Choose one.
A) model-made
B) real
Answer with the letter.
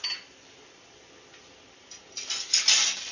B